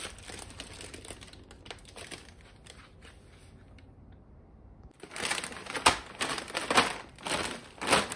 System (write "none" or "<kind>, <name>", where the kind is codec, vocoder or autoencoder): none